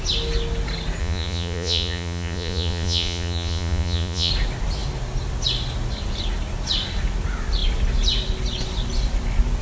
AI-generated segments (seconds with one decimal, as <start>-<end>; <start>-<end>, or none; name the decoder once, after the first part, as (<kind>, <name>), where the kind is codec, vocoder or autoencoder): 1.0-4.3 (vocoder, Vocos)